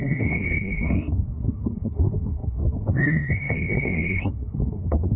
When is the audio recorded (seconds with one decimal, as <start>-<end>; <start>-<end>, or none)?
none